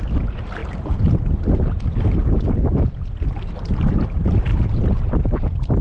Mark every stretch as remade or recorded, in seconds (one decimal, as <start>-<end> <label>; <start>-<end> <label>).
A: 0.0-0.6 remade; 0.6-2.4 recorded; 2.4-4.5 remade; 4.5-5.0 recorded; 5.0-5.8 remade